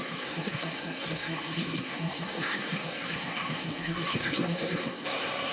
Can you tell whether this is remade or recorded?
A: remade